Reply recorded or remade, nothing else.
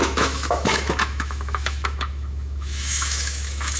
remade